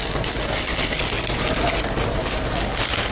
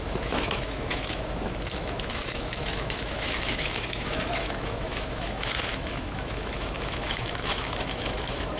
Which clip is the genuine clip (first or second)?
first